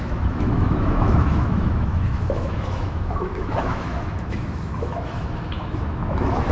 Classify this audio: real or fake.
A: fake